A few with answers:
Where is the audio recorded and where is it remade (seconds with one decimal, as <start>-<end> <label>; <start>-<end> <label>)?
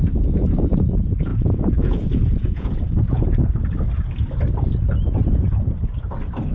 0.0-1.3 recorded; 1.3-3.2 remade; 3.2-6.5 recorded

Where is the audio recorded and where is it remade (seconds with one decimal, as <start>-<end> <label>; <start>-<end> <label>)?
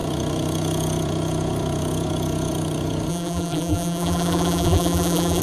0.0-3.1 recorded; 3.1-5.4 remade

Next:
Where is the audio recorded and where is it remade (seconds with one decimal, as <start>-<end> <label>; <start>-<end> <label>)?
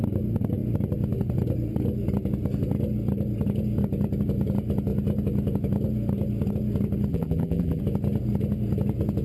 0.0-7.1 recorded; 7.1-7.8 remade; 7.8-9.2 recorded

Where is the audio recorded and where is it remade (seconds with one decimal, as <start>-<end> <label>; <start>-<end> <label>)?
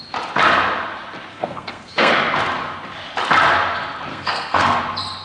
0.0-1.3 recorded; 1.3-2.1 remade; 2.1-4.1 recorded; 4.1-4.8 remade; 4.8-5.2 recorded